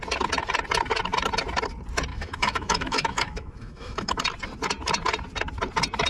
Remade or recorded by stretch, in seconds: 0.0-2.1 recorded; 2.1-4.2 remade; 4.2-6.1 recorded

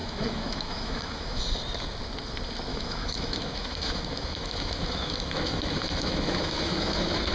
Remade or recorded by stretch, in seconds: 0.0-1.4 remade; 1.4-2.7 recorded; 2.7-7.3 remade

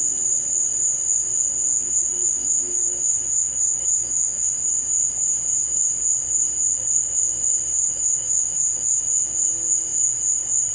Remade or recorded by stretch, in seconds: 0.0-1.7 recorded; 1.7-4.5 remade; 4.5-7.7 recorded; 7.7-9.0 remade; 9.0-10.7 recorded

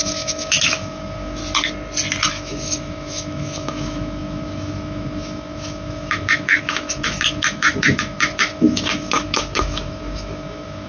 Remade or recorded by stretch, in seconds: 0.0-1.4 remade; 1.4-2.3 recorded; 2.3-10.9 remade

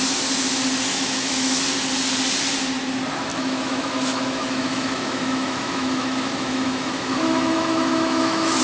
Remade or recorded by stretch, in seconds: 0.0-0.9 recorded; 0.9-1.6 remade; 1.6-3.3 recorded; 3.3-8.6 remade

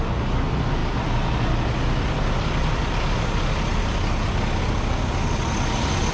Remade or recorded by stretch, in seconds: 0.0-6.1 recorded

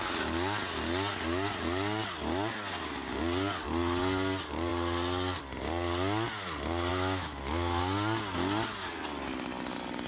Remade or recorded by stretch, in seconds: 0.0-6.9 recorded; 6.9-7.8 remade; 7.8-10.1 recorded